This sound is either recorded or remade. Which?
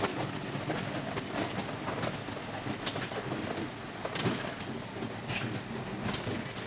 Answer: recorded